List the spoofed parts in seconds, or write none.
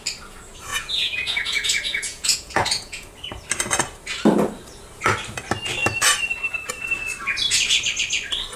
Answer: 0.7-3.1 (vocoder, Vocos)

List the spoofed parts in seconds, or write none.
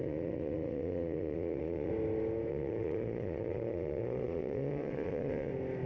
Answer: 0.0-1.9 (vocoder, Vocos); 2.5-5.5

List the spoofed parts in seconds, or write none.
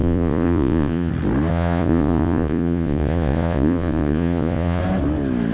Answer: 0.0-1.1 (vocoder, Vocos); 1.5-4.8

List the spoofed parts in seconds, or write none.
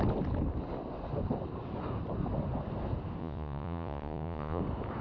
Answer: 3.2-4.6 (vocoder, Vocos)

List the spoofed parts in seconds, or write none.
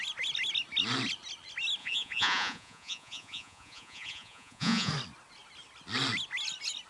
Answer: 1.8-4.9 (vocoder, Vocos)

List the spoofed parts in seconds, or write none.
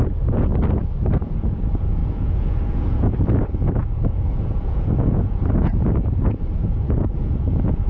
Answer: 0.0-0.5 (vocoder, Vocos); 1.2-7.9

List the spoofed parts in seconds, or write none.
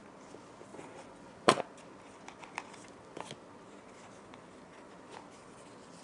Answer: 0.7-1.6 (vocoder, Vocos)